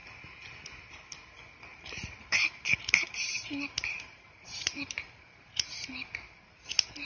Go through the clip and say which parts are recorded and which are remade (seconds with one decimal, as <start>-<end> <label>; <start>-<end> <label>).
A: 0.0-1.7 recorded; 1.7-5.9 remade; 5.9-7.0 recorded